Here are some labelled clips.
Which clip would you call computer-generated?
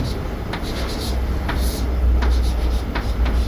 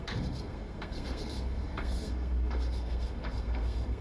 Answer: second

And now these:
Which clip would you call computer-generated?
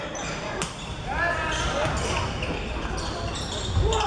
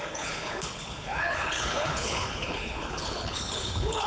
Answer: second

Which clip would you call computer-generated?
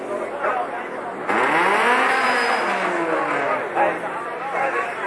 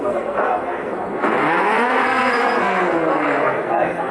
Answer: second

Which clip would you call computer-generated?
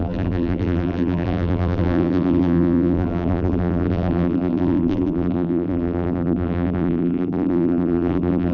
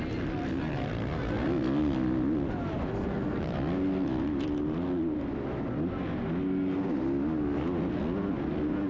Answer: first